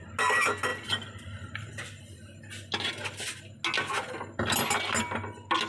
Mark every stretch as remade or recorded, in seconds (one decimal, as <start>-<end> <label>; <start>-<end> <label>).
0.0-5.7 recorded